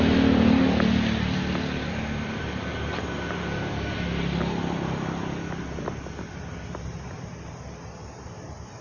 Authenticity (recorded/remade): recorded